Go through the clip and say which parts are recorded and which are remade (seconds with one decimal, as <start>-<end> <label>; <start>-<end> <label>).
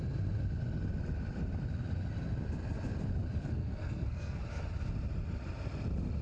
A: 0.0-3.4 recorded; 3.4-4.4 remade; 4.4-6.2 recorded